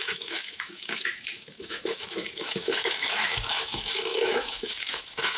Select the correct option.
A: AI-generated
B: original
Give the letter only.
A